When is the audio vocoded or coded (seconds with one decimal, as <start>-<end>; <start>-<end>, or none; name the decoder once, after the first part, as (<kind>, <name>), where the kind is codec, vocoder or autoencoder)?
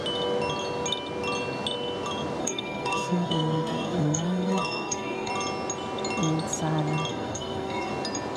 2.4-5.3 (codec, SNAC); 7.1-7.9